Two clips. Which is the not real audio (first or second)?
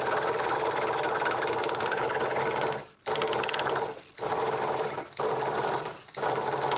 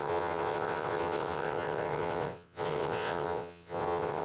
second